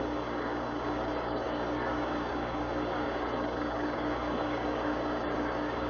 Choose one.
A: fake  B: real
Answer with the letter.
A